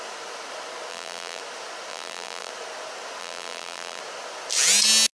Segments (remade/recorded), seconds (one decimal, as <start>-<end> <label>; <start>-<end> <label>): 0.0-0.9 recorded; 0.9-1.4 remade; 1.4-1.9 recorded; 1.9-2.5 remade; 2.5-3.2 recorded; 3.2-4.0 remade; 4.0-5.1 recorded